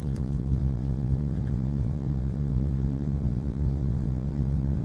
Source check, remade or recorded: remade